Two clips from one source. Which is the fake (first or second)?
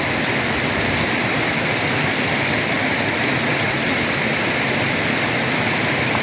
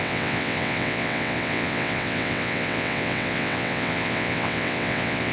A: second